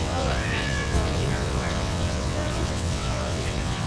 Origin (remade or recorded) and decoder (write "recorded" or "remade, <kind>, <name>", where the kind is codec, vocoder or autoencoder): remade, vocoder, WaveNeXt